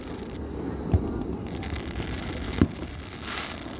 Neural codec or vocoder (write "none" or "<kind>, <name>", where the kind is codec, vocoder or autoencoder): none